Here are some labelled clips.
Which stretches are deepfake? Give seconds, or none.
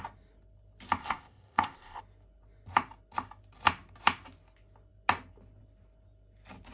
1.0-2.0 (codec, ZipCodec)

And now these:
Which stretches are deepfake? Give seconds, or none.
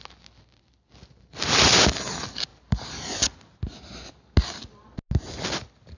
none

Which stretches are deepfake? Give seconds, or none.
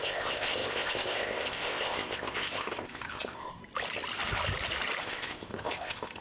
0.0-3.6 (codec, ZipCodec); 5.0-6.2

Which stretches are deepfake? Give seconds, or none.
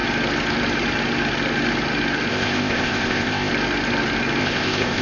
2.3-3.5 (codec, ZipCodec); 4.4-5.0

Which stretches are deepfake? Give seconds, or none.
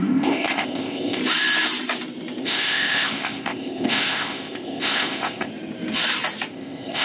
0.0-1.2 (codec, ZipCodec); 2.4-5.5; 6.5-7.0